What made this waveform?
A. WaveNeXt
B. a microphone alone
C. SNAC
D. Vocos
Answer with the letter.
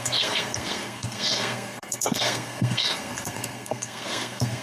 C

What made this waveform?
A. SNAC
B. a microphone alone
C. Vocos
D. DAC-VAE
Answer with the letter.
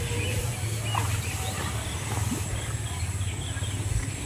B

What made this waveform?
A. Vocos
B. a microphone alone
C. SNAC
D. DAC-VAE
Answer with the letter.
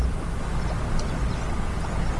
B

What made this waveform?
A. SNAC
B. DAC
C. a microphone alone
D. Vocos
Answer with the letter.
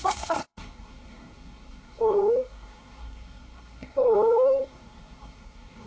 A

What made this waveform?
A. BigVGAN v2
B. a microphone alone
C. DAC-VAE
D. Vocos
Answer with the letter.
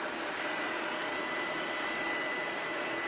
B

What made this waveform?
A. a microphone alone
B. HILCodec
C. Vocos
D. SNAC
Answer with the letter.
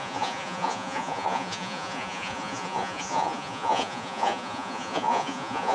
C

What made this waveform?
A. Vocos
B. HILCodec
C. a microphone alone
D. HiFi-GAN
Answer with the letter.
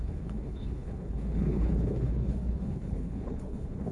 B